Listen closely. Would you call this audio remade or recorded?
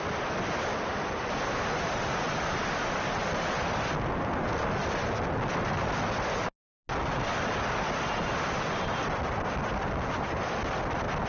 recorded